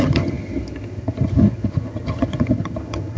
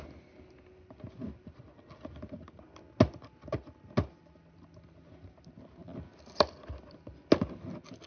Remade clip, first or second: first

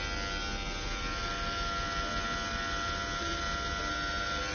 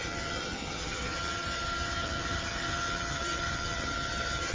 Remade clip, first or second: second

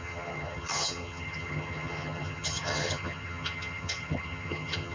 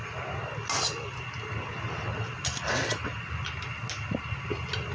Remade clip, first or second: first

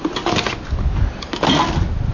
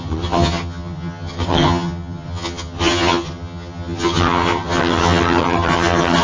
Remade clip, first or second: second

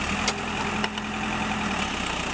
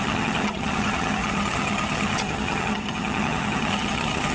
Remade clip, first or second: second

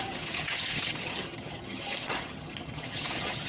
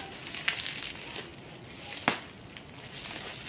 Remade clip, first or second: first